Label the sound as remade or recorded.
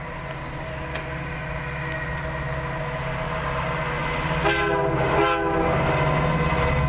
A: recorded